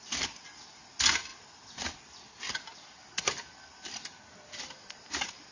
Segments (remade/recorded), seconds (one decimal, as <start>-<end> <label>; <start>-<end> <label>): 0.0-5.5 recorded